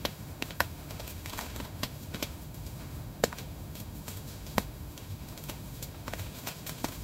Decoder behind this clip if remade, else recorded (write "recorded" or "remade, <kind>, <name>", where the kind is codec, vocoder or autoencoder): remade, autoencoder, DAC-VAE